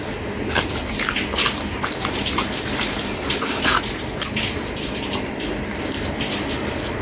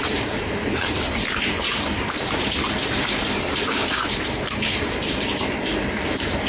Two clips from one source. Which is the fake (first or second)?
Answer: second